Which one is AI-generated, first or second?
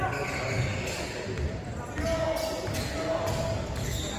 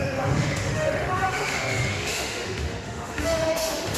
second